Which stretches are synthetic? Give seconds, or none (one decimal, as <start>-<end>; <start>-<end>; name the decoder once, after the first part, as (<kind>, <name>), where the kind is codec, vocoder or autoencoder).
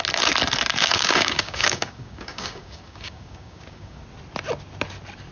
0.8-4.0 (codec, DAC)